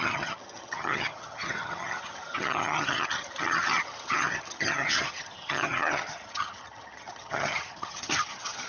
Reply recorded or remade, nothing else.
remade